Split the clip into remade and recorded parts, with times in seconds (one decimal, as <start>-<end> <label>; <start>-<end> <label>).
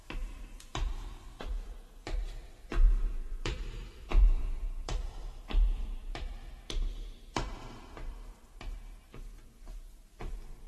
0.0-10.7 remade